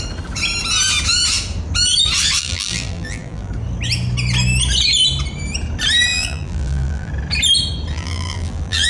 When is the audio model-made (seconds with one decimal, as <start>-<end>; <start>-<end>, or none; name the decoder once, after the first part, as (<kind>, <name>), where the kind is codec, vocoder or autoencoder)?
2.4-3.5 (vocoder, BigVGAN v2); 6.1-7.1; 7.9-8.9